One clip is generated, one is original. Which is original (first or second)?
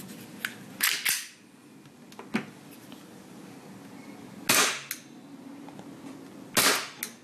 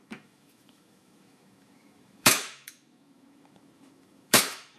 first